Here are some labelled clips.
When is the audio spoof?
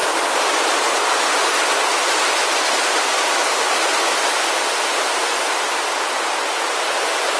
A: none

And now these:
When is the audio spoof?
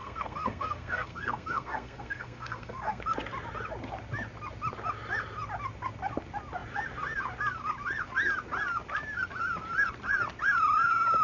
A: 0.0-3.0 (codec, SNAC)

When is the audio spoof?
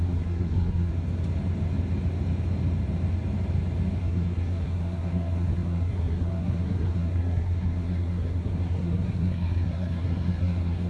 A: 0.0-0.9 (codec, SNAC); 4.0-10.9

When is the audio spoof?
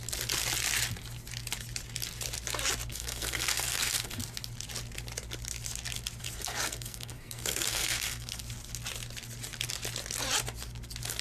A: 2.9-4.2 (codec, SNAC); 6.2-8.4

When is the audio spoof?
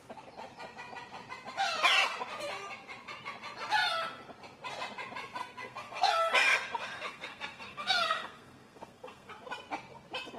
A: 5.4-9.3 (codec, SNAC)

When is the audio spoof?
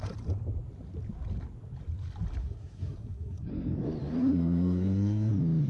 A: 2.4-3.5 (codec, SNAC); 4.2-5.3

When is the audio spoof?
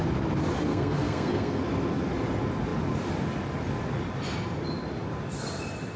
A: 0.7-1.6 (codec, SNAC)